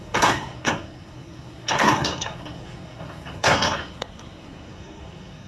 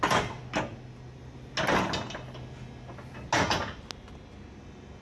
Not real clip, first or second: first